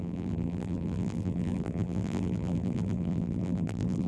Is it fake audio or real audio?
fake